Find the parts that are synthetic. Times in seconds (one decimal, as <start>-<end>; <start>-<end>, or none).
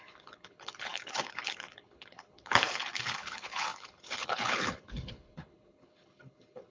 0.0-6.7